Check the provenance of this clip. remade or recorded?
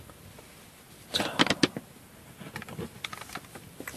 recorded